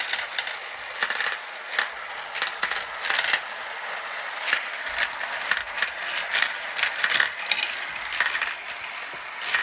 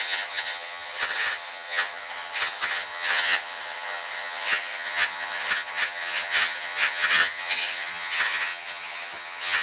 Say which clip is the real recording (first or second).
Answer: first